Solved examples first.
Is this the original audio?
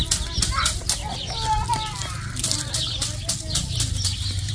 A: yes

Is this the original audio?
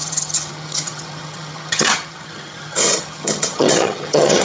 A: no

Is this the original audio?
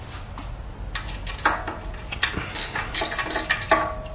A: yes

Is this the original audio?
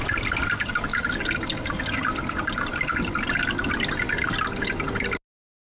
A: yes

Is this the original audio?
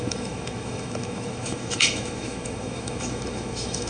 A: no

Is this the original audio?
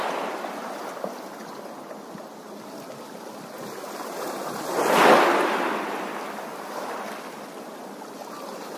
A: yes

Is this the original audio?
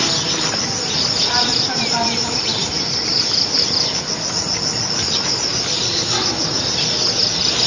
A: yes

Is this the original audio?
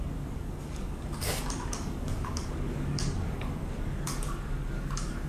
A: no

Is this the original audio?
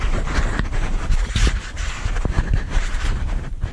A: no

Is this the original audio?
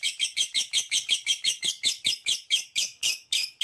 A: no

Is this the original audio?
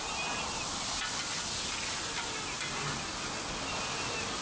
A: yes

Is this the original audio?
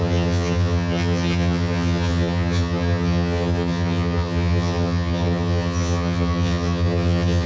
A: no